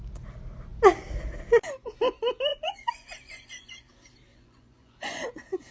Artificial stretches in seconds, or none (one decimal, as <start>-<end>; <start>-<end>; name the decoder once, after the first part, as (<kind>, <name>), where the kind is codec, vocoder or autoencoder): 2.5-3.9 (vocoder, Vocos); 4.3-5.7